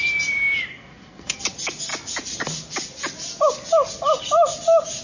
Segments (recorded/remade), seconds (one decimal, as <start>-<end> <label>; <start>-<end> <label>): 0.0-0.7 recorded; 0.7-1.4 remade; 1.4-5.0 recorded